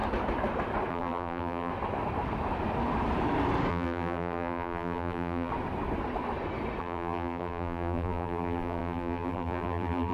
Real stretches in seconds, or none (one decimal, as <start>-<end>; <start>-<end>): 0.0-0.9; 1.7-3.7; 5.5-6.8